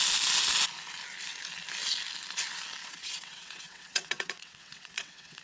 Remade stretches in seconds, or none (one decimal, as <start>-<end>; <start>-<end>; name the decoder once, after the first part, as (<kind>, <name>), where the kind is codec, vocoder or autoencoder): 2.8-5.4 (vocoder, WaveNeXt)